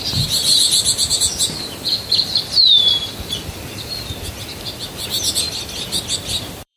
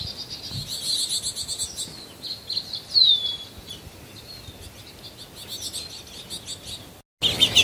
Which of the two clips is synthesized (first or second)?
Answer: first